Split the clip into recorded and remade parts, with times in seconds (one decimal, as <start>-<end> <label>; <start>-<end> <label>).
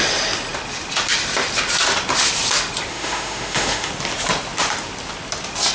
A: 0.0-2.9 recorded; 2.9-3.9 remade; 3.9-5.7 recorded